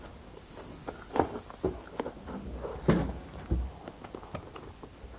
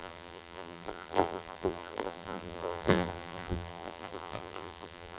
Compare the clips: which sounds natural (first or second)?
first